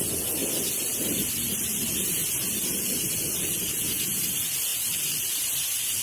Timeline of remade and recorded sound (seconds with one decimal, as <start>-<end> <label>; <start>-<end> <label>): 0.0-6.0 recorded